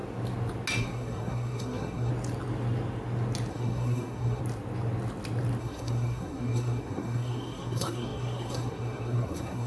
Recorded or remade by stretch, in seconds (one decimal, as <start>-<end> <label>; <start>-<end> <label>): 0.0-0.8 recorded; 0.8-2.1 remade; 2.1-3.5 recorded; 3.5-4.4 remade; 4.4-5.6 recorded; 5.6-9.7 remade